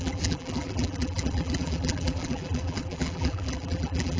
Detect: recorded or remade remade